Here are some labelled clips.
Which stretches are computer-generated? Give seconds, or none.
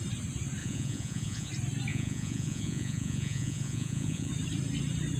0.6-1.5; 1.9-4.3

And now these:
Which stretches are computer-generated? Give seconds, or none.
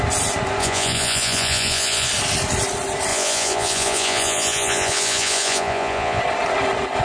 0.6-2.1; 3.1-6.2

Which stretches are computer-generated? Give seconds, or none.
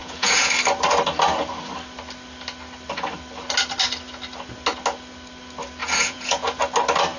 0.0-0.6; 5.8-6.6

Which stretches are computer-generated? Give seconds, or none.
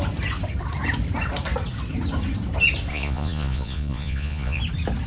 2.9-4.6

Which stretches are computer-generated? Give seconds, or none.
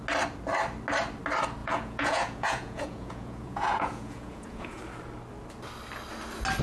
1.6-4.8